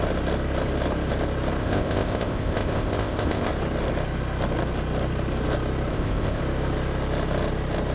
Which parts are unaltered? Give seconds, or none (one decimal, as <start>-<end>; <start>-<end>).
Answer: 0.0-1.6; 3.5-5.9; 6.4-7.9